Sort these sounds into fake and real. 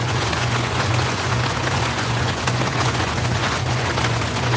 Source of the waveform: fake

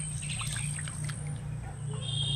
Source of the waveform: real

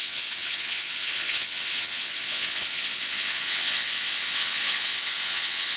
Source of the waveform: fake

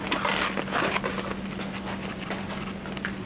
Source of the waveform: real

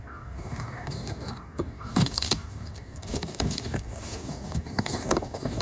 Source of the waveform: fake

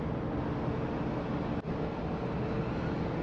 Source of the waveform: real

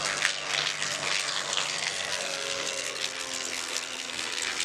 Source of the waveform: fake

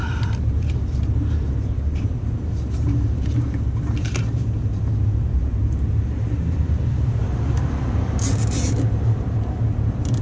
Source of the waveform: fake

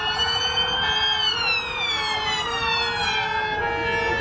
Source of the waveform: real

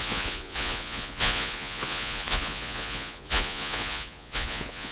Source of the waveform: fake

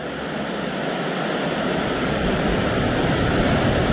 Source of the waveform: real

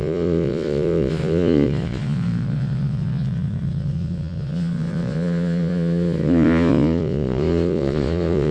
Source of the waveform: fake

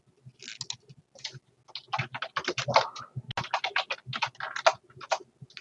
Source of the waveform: real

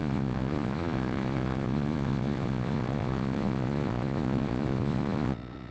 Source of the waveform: fake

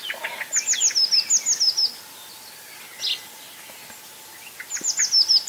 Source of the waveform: real